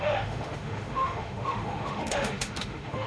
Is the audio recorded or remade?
remade